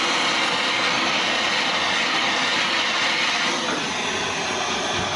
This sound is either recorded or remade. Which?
recorded